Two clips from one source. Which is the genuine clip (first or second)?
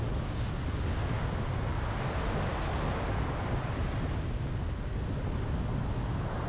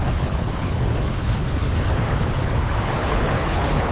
first